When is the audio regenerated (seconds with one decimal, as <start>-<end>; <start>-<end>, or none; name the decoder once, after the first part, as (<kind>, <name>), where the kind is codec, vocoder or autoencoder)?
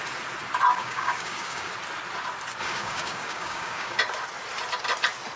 0.8-1.7 (codec, DAC); 2.6-4.0